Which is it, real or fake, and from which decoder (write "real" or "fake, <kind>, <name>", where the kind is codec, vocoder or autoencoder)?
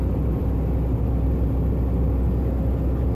real